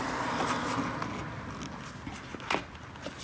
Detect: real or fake real